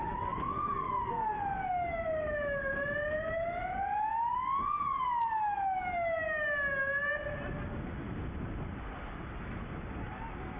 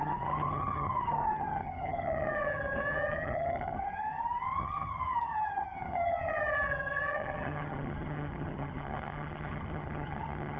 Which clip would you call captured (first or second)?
first